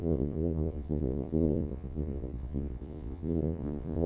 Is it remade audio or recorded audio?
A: remade